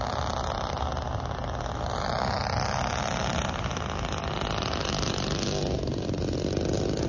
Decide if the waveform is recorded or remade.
recorded